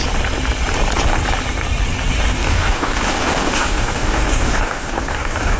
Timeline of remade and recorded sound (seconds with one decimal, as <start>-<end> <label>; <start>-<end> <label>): 0.0-2.3 recorded; 2.3-5.6 remade